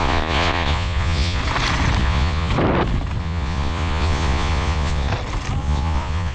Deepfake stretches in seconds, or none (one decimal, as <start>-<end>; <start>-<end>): 0.0-1.4; 2.0-2.5; 3.2-5.1; 5.6-6.3